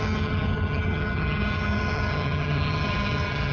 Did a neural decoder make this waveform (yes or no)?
yes